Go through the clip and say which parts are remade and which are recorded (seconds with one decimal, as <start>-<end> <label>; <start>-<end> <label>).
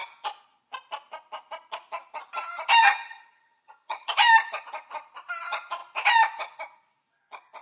0.0-2.8 recorded; 2.8-4.1 remade; 4.1-7.6 recorded